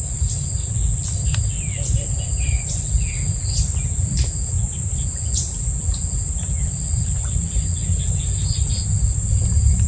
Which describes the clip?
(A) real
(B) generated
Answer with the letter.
A